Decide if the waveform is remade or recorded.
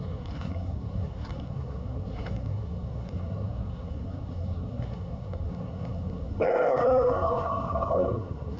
remade